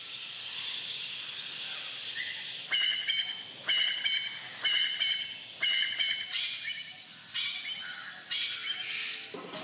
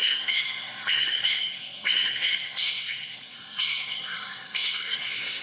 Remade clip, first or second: second